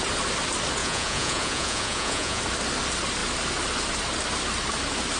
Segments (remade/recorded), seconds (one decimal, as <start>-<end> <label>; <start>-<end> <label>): 0.0-0.8 recorded; 0.8-2.4 remade; 2.4-5.2 recorded